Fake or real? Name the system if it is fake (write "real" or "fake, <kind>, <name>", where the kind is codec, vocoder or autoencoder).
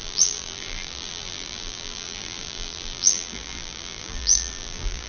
fake, vocoder, BigVGAN v2